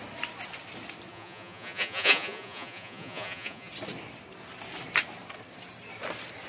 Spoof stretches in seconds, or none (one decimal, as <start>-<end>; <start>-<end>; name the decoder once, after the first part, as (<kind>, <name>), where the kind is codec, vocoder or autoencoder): 1.1-3.7 (vocoder, Vocos)